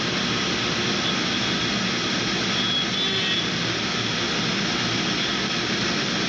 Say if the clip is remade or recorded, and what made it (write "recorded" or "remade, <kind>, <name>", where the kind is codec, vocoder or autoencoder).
recorded